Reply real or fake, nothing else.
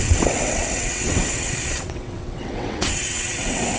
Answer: fake